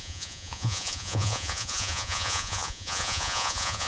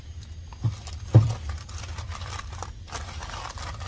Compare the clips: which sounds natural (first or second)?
second